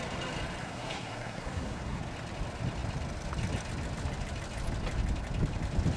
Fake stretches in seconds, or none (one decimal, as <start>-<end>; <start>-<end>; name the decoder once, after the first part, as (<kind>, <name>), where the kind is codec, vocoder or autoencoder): 0.6-2.0 (codec, SNAC)

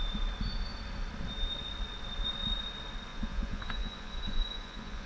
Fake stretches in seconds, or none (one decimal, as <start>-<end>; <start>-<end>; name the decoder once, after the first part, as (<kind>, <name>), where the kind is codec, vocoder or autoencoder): 3.1-5.1 (vocoder, Vocos)

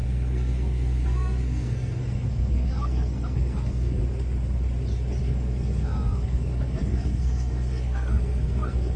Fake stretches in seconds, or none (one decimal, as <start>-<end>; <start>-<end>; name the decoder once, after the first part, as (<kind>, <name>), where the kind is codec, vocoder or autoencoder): 0.0-4.0 (codec, SNAC); 5.2-9.0

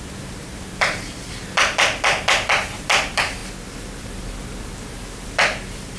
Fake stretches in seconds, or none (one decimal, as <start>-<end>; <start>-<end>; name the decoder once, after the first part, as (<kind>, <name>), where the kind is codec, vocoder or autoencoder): 0.0-3.4 (vocoder, BigVGAN v2); 4.0-6.0

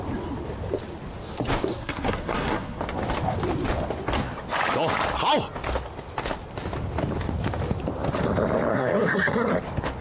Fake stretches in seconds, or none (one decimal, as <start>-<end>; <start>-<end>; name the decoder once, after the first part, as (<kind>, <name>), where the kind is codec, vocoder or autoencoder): 1.7-2.8 (codec, SNAC); 8.7-9.5

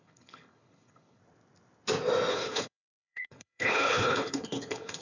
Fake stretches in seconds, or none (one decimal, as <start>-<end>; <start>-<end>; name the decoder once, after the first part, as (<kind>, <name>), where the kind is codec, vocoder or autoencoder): 0.0-1.2 (codec, HILCodec); 2.3-5.0

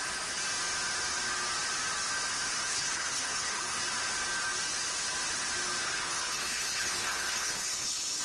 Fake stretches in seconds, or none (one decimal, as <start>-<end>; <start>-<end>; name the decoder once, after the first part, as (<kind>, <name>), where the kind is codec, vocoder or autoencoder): 2.7-3.8 (codec, HILCodec); 5.8-8.2

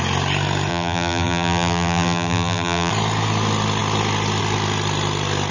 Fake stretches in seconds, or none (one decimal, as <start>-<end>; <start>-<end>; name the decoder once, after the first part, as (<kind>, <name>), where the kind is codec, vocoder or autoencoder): 0.7-2.9 (vocoder, BigVGAN v2)